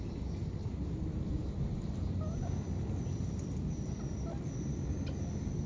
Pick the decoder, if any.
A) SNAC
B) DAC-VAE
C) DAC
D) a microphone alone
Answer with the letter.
D